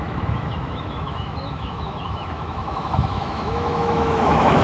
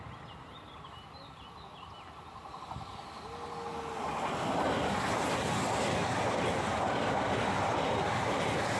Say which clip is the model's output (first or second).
first